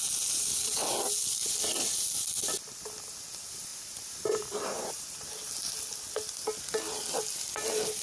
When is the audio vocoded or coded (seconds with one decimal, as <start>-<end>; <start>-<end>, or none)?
3.7-4.9